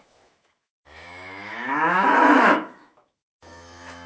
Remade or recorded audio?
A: remade